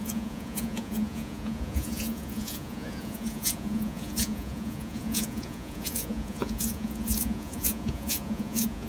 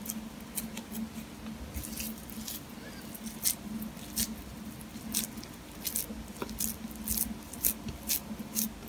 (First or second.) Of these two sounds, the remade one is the first